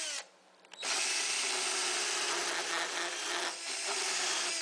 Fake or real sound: real